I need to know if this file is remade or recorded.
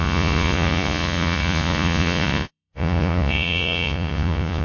remade